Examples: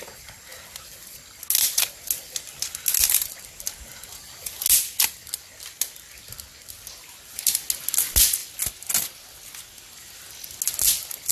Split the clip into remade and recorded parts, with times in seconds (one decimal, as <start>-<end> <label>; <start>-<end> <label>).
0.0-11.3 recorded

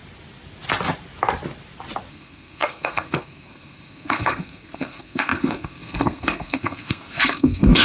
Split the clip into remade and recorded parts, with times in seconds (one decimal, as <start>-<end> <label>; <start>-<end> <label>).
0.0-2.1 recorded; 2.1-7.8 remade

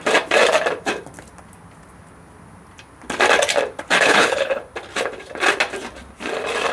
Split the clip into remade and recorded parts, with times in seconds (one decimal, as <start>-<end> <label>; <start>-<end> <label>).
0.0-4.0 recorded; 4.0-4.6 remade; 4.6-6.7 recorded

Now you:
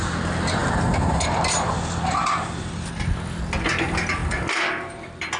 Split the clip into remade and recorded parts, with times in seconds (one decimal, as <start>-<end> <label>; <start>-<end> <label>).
0.0-5.4 recorded